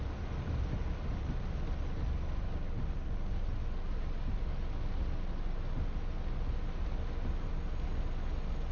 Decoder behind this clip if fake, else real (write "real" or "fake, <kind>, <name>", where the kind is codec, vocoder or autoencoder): real